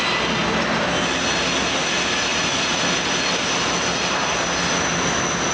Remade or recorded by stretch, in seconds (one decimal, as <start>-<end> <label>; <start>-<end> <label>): 0.0-2.3 recorded; 2.3-2.8 remade; 2.8-5.5 recorded